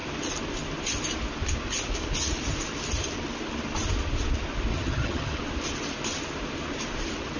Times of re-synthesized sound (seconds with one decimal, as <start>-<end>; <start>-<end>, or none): 4.7-5.4